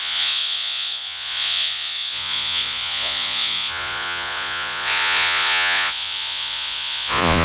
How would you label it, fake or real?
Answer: fake